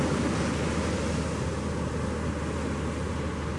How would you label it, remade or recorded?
recorded